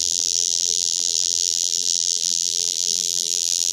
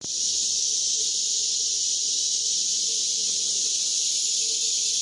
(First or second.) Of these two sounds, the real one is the second